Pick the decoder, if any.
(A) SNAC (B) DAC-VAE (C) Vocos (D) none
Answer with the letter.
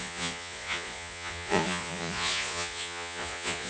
C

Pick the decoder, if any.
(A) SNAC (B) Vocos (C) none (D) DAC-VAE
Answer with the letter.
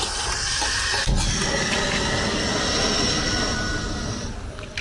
C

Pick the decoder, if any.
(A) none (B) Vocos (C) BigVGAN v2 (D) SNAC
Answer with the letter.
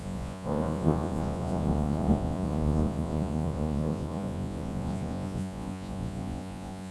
B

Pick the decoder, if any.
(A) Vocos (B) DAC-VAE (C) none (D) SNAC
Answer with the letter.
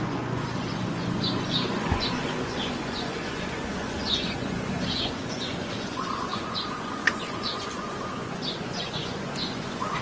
A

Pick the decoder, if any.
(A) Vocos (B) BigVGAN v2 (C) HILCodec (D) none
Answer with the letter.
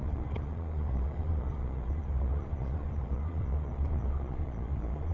A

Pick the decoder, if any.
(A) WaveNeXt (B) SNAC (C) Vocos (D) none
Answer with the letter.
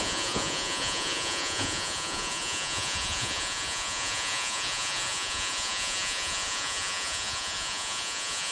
C